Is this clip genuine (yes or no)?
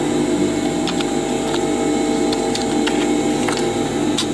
yes